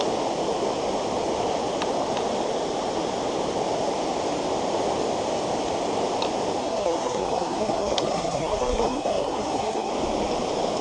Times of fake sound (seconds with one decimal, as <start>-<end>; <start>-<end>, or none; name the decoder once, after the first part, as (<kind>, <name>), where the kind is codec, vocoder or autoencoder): 6.6-9.9 (codec, SNAC)